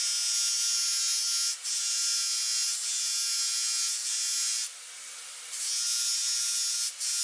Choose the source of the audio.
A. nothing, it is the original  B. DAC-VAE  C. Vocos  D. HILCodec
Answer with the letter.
A